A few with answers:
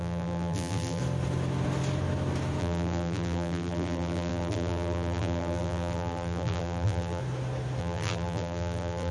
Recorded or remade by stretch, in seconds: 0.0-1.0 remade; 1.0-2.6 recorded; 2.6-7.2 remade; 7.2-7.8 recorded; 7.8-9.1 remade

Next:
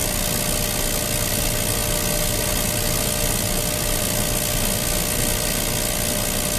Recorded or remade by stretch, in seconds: 0.0-6.6 recorded

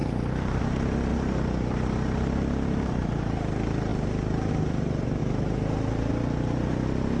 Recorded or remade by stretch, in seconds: 0.0-0.6 remade; 0.6-1.1 recorded; 1.1-3.4 remade; 3.4-5.2 recorded; 5.2-6.1 remade; 6.1-7.2 recorded